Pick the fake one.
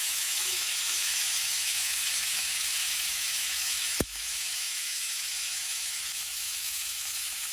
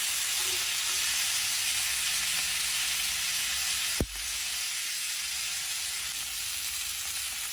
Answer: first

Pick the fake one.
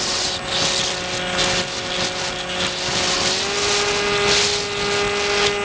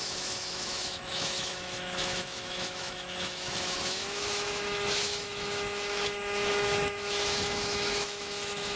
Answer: second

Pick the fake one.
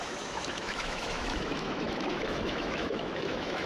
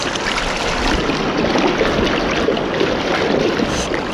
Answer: first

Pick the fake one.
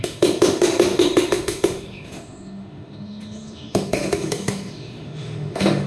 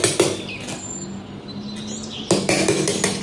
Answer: first